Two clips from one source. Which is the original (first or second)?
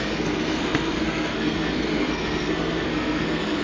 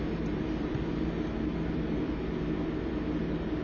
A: second